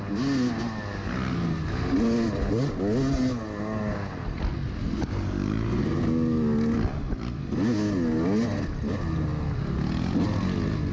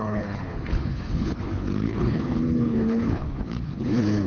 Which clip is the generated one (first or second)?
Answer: second